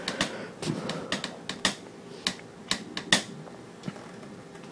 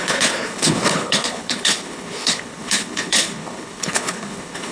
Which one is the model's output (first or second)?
second